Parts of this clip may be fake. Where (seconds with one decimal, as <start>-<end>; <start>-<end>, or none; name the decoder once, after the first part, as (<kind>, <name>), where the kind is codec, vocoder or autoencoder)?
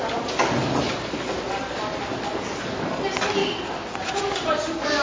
none